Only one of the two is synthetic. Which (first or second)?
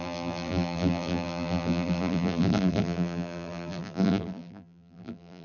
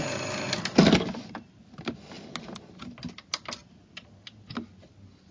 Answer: first